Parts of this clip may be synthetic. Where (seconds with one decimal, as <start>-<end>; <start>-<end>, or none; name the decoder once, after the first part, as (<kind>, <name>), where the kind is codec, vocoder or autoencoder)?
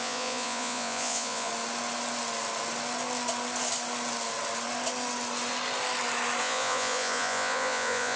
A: 0.0-1.5 (vocoder, Vocos); 6.4-8.2